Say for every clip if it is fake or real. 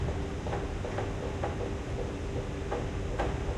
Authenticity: real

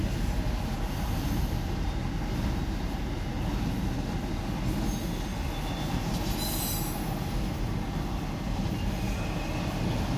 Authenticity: real